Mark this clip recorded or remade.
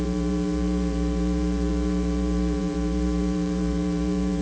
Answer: remade